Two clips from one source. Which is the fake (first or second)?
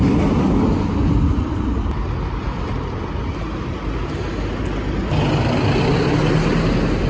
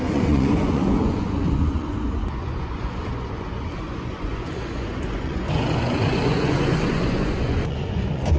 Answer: second